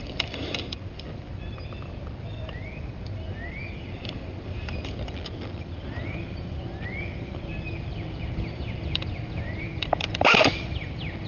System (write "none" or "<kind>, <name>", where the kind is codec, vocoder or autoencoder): vocoder, BigVGAN v2